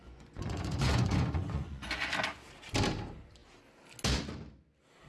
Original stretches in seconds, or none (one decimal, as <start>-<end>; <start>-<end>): 2.1-5.1